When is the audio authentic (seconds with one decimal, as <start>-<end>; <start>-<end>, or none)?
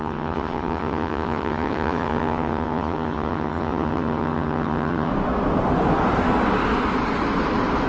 5.1-7.9